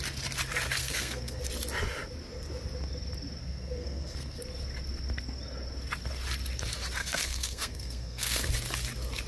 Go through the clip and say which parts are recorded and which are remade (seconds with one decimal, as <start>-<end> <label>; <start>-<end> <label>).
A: 0.0-0.8 recorded; 0.8-1.4 remade; 1.4-3.4 recorded; 3.4-4.4 remade; 4.4-7.0 recorded; 7.0-8.5 remade; 8.5-9.3 recorded